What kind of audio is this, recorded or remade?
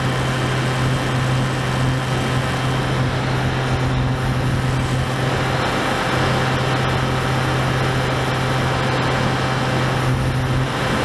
recorded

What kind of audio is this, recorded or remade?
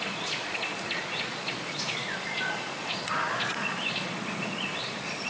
remade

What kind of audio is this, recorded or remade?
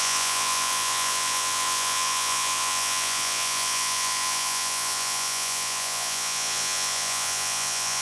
remade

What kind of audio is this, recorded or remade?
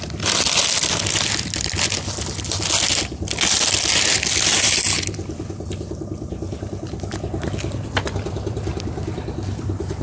recorded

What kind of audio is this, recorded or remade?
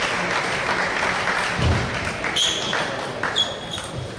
recorded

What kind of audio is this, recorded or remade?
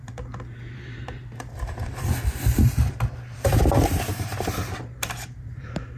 remade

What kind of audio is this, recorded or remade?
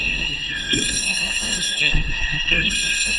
remade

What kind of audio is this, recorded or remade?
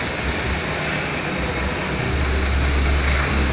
recorded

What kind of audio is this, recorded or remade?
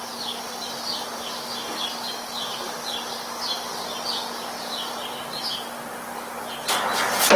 recorded